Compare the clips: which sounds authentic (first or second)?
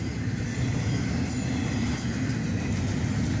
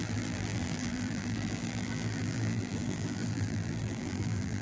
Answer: first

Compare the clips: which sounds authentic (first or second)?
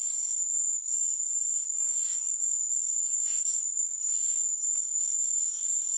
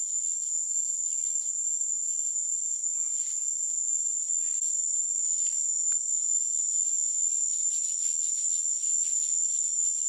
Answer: second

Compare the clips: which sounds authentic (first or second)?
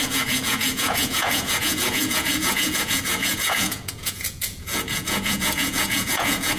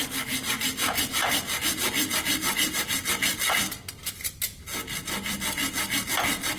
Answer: second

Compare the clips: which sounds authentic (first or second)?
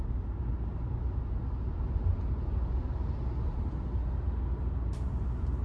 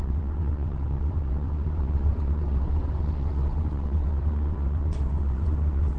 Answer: first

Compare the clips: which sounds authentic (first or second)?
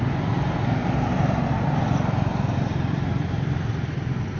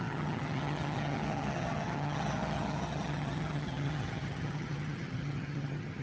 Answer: first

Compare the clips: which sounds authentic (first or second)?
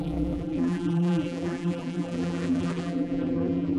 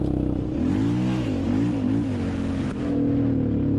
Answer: second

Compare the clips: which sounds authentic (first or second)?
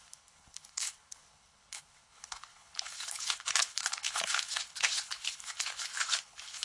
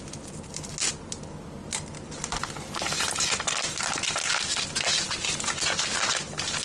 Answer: second